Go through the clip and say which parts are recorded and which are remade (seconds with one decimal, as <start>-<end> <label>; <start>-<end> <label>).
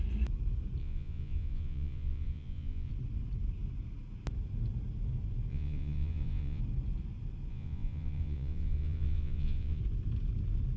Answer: 0.0-0.8 recorded; 0.8-2.9 remade; 2.9-5.5 recorded; 5.5-6.6 remade; 6.6-7.5 recorded; 7.5-9.8 remade; 9.8-10.8 recorded